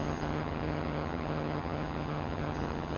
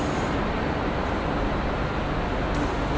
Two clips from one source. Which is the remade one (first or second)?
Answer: first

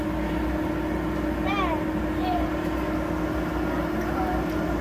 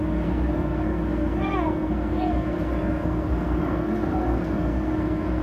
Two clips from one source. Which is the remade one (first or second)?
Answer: second